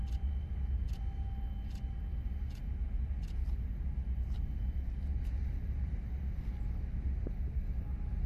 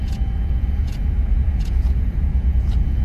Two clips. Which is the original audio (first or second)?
first